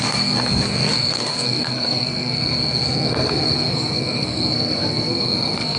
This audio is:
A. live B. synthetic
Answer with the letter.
B